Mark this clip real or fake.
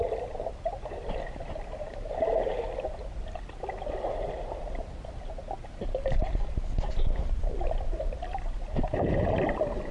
real